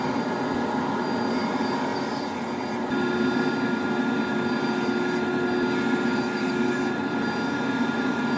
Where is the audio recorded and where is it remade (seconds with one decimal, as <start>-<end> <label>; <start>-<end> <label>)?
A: 0.0-8.4 recorded